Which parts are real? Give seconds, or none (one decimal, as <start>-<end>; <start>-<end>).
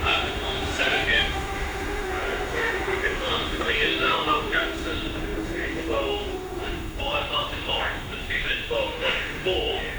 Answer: none